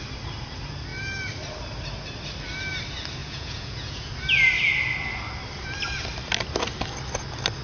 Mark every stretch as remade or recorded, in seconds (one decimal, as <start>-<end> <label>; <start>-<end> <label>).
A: 0.0-3.2 recorded; 3.2-4.1 remade; 4.1-7.6 recorded